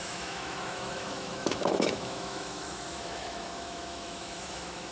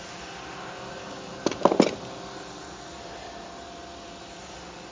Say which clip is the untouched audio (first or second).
second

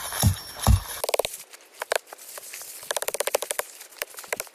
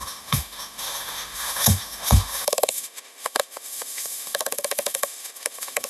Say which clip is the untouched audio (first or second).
first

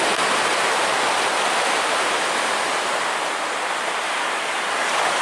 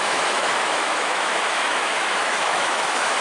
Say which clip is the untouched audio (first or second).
first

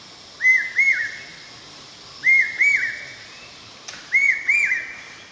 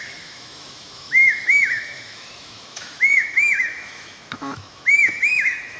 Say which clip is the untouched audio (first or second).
first